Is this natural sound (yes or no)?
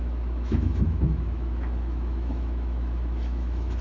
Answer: no